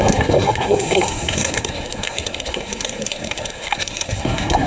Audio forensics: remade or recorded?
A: remade